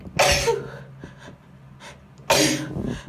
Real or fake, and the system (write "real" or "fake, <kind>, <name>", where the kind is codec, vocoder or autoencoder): real